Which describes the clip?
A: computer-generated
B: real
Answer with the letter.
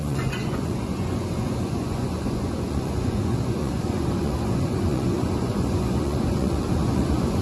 A